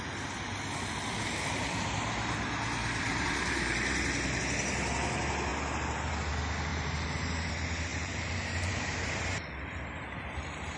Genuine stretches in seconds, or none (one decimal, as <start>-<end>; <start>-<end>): 0.0-2.8; 4.4-6.7; 7.5-7.9; 9.4-10.8